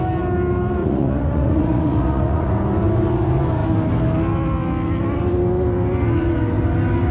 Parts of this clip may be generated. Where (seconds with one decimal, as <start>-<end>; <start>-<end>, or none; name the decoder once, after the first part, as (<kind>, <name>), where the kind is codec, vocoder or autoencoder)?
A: 0.8-2.5 (vocoder, Vocos)